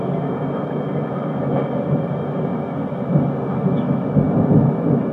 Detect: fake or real fake